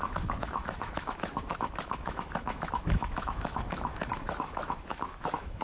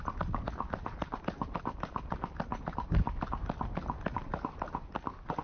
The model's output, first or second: first